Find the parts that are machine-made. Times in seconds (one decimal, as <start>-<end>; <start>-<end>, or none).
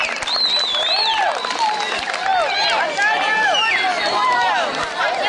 none